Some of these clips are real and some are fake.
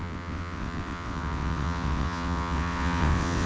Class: fake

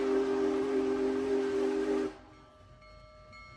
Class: real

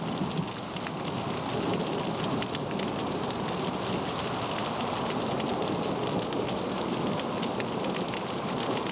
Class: real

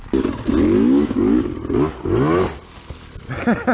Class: real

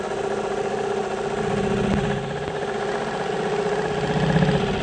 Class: real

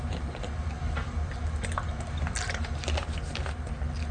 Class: real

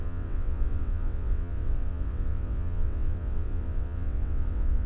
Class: fake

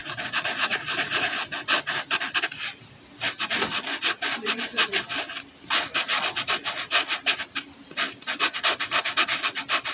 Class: real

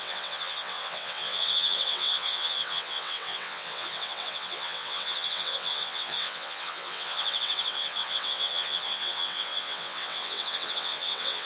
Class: fake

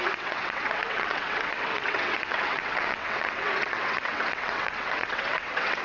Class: fake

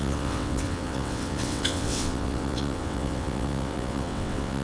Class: fake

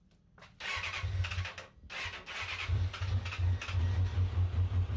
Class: real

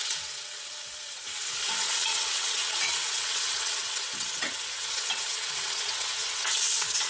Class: fake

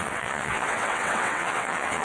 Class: fake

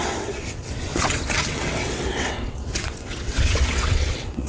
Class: fake